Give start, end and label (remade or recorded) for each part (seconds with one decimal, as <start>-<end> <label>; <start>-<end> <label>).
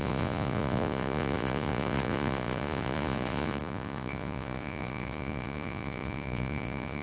0.0-7.0 remade